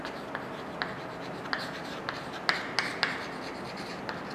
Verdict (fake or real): real